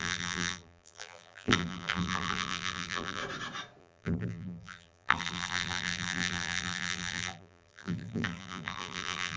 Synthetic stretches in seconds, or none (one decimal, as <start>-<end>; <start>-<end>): 0.0-3.2; 3.8-9.4